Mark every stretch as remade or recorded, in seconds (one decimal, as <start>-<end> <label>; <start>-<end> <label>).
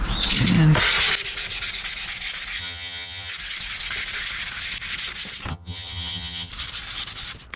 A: 0.0-2.6 recorded; 2.6-3.3 remade; 3.3-5.5 recorded; 5.5-6.5 remade; 6.5-7.6 recorded